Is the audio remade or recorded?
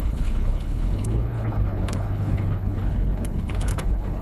remade